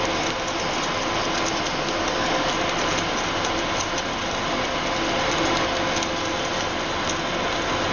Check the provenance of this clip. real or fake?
real